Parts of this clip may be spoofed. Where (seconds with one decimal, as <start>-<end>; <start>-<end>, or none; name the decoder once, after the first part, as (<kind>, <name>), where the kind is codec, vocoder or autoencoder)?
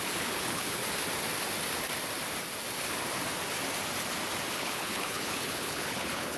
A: 0.0-0.8 (codec, HILCodec); 4.6-6.4